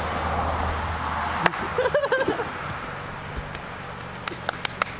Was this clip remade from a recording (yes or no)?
no